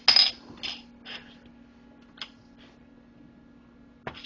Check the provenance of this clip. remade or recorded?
recorded